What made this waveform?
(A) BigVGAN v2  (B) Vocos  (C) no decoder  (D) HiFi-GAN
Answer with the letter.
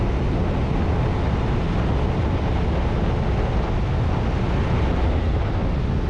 C